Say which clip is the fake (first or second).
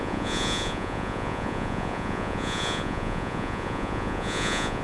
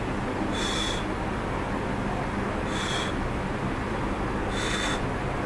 first